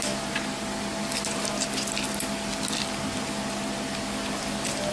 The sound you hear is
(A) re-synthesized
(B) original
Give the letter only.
A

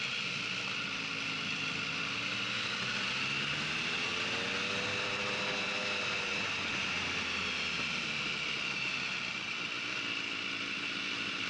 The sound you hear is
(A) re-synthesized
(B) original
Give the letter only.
B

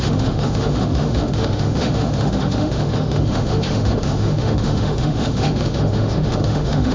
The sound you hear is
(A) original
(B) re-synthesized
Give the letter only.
B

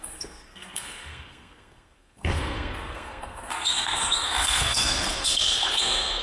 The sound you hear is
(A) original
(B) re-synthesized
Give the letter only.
B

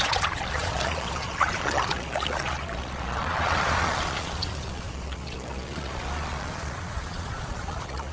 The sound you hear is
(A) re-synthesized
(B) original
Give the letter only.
A